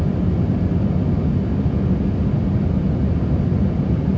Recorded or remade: recorded